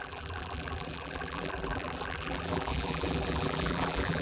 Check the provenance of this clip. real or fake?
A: fake